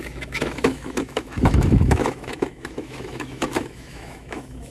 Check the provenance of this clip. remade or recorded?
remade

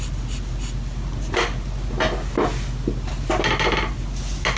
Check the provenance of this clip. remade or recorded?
recorded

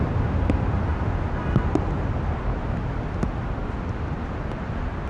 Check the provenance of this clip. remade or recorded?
recorded